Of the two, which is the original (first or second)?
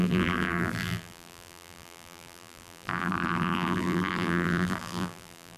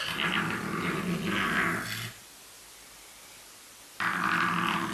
second